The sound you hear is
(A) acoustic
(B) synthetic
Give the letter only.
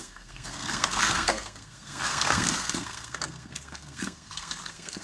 B